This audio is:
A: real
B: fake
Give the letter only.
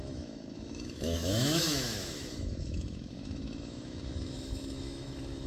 B